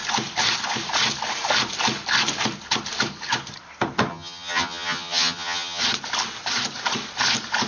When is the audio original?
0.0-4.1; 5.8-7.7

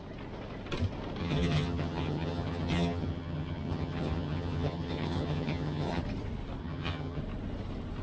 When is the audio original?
0.0-1.2; 6.0-6.6; 7.2-8.0

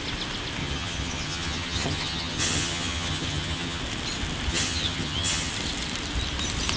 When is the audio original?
0.0-0.6; 3.8-4.5; 5.5-6.8

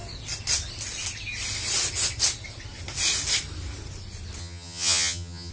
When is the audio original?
0.0-4.4

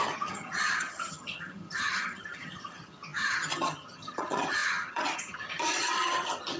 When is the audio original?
none

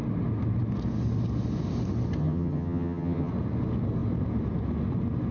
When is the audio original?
0.0-2.2; 3.3-5.3